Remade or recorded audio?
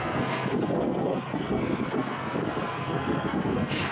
remade